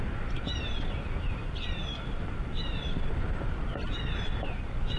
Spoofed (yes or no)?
no